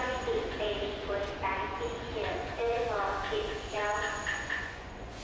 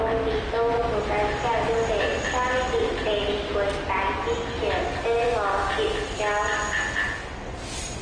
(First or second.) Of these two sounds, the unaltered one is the second